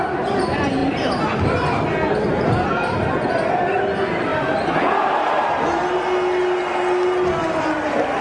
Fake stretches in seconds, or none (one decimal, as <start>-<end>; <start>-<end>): none